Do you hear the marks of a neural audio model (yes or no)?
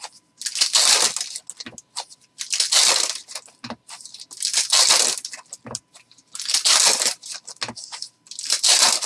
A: no